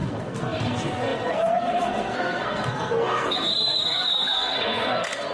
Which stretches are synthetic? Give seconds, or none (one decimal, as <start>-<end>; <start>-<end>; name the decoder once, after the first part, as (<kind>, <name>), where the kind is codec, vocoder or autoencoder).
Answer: 0.0-5.3 (codec, SNAC)